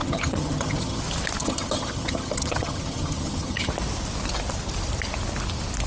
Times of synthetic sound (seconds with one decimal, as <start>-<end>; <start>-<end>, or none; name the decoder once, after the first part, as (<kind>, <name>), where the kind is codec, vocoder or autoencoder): 0.0-1.0 (vocoder, HiFi-GAN); 1.4-3.7